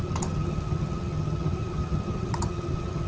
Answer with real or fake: fake